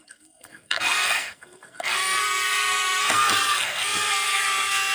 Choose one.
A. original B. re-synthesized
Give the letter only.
B